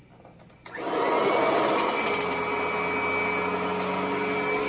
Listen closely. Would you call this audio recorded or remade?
recorded